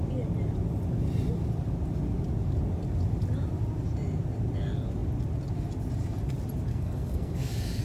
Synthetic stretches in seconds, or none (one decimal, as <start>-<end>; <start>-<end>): 6.7-7.8